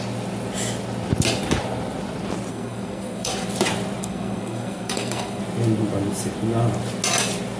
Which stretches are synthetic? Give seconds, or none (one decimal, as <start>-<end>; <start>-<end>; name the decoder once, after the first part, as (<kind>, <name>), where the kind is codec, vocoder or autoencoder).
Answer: 2.5-3.3 (codec, SNAC); 4.0-5.4